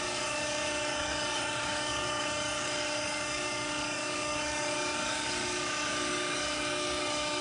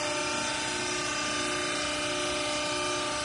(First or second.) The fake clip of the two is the first